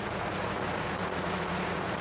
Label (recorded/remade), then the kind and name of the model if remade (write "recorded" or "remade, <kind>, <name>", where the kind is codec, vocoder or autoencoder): remade, vocoder, Vocos